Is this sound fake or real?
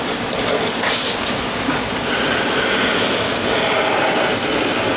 real